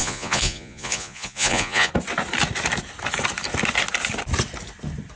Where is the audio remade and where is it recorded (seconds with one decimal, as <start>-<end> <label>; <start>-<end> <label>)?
0.0-1.9 remade; 1.9-5.2 recorded